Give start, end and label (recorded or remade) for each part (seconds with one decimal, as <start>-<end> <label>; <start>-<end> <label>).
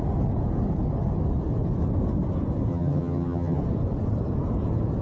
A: 0.0-2.7 recorded; 2.7-3.6 remade; 3.6-5.0 recorded